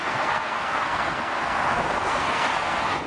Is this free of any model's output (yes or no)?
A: no